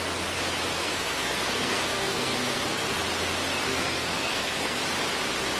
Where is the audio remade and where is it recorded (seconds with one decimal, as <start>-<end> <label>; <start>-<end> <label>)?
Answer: 0.0-0.8 recorded; 0.8-3.0 remade; 3.0-3.7 recorded; 3.7-4.8 remade; 4.8-5.6 recorded